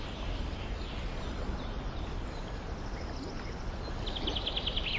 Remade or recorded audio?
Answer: recorded